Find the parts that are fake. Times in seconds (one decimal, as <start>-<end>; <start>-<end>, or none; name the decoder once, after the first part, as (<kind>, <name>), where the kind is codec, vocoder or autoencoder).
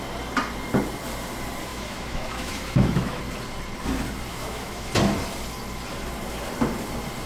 1.7-3.2 (autoencoder, DAC-VAE); 4.3-4.9